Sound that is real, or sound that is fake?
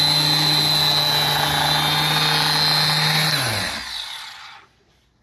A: real